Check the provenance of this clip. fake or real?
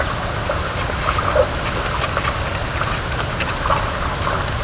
real